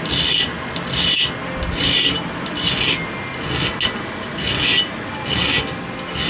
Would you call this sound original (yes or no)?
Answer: yes